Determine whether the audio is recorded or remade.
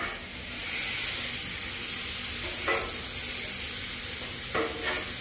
recorded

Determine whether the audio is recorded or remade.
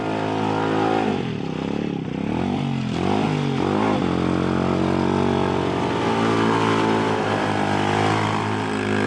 recorded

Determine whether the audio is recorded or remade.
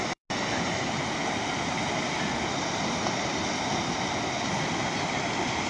recorded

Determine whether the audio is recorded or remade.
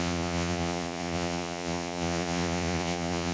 remade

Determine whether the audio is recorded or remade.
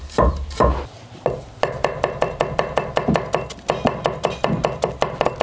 recorded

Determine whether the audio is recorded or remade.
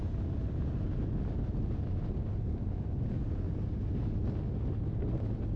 recorded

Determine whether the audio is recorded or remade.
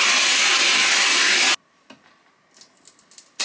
recorded